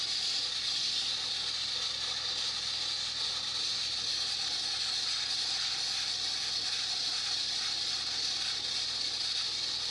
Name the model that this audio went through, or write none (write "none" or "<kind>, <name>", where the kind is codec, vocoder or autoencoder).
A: vocoder, BigVGAN v2